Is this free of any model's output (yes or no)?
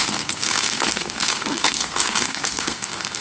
no